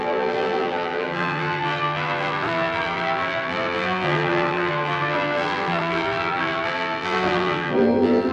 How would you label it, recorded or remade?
remade